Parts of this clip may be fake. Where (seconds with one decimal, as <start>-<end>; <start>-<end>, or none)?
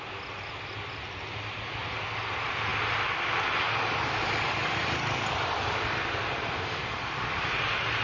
none